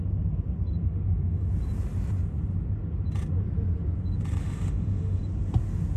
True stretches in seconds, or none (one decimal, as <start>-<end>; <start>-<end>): 0.0-0.8; 1.5-4.4; 5.2-6.0